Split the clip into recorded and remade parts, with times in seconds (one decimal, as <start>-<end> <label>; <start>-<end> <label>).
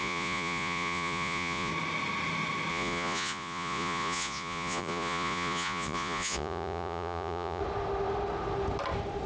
0.0-1.7 remade; 1.7-2.7 recorded; 2.7-7.6 remade; 7.6-9.3 recorded